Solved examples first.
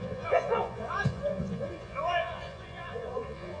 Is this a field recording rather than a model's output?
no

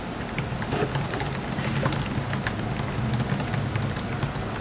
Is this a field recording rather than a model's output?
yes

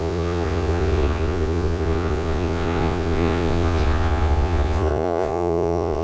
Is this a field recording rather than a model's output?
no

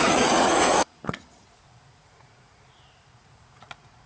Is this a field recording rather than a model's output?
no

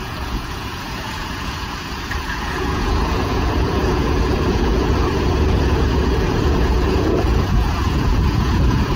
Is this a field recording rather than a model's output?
no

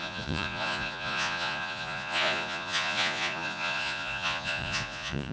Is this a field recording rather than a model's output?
no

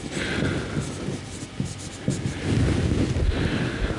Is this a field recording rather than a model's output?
yes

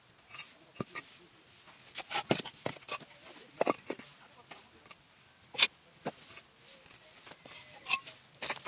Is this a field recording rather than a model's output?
yes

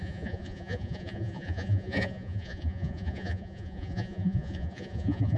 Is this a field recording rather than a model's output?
no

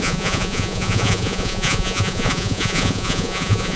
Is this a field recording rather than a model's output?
no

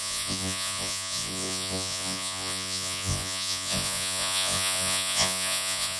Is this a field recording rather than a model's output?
no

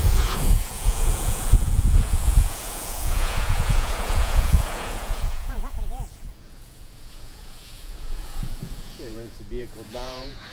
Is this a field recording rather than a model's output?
no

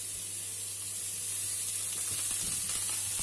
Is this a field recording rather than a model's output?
yes